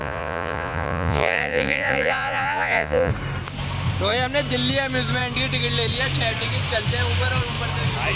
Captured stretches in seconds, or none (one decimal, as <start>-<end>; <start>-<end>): 3.1-8.2